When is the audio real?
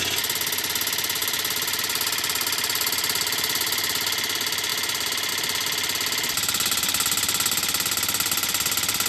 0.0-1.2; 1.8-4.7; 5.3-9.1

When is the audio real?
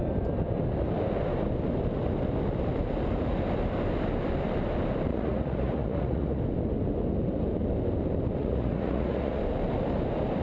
0.0-5.1; 6.4-8.4; 9.4-10.4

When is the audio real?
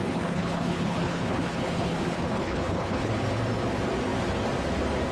3.1-5.1